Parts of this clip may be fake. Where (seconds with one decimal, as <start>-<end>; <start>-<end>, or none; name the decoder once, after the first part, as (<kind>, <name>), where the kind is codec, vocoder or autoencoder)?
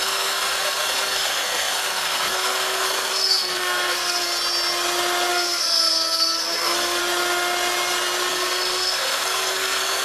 0.0-4.3 (codec, SNAC); 5.3-7.0; 8.3-10.0